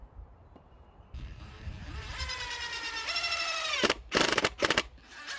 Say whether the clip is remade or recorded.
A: remade